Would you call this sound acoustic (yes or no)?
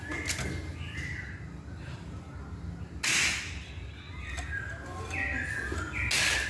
yes